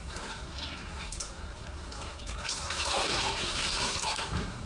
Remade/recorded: remade